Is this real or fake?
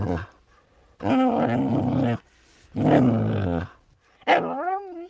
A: real